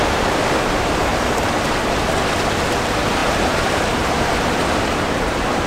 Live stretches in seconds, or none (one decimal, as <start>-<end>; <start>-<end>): 1.1-2.6